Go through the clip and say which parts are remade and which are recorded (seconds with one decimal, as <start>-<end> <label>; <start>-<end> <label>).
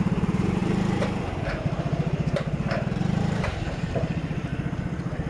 0.0-4.5 remade; 4.5-5.3 recorded